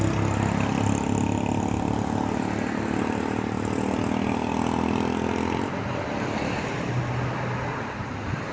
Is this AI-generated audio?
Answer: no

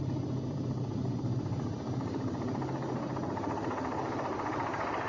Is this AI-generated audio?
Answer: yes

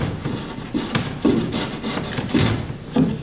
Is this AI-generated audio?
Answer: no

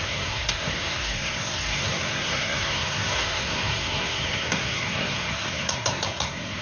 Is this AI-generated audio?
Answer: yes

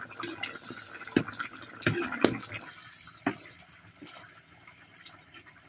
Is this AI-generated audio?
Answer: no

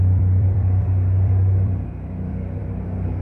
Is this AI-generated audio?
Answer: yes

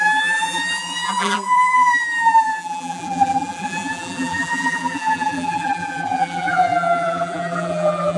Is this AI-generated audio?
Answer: yes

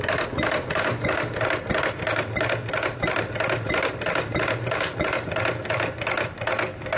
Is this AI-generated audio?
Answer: no